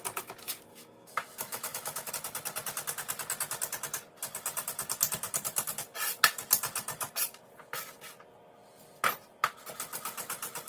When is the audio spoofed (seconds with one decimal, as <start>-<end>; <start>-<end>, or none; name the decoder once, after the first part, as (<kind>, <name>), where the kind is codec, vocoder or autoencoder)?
0.7-2.1 (autoencoder, DAC-VAE)